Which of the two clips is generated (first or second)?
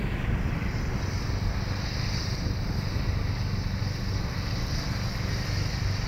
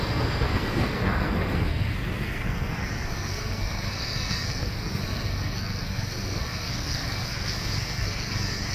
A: second